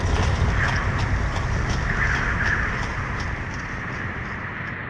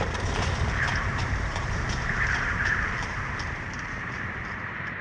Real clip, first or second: first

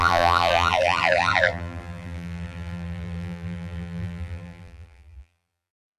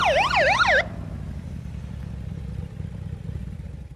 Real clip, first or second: second